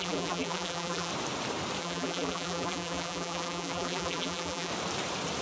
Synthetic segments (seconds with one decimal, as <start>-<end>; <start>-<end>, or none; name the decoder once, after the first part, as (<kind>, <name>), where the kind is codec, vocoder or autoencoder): 0.0-1.1 (vocoder, BigVGAN v2); 1.8-4.7